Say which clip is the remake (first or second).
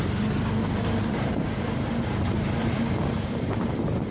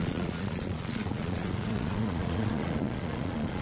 second